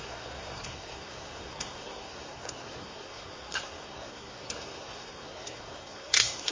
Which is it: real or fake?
fake